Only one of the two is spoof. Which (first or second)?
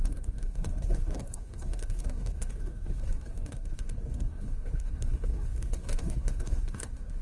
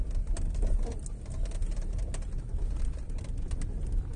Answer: first